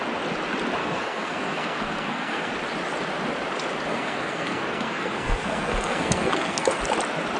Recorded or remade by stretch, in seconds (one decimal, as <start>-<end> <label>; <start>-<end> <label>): 0.0-0.8 recorded; 0.8-2.5 remade; 2.5-3.9 recorded; 3.9-6.8 remade; 6.8-7.4 recorded